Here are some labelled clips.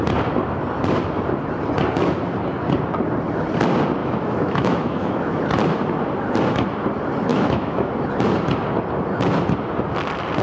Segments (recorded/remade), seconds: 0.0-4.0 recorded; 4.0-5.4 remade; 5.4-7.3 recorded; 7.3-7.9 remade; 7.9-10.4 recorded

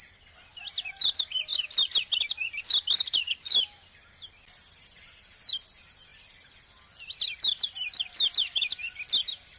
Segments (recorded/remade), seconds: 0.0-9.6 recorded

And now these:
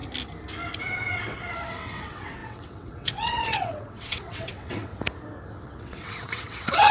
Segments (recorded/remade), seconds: 0.0-0.8 recorded; 0.8-4.9 remade; 4.9-5.6 recorded; 5.6-6.9 remade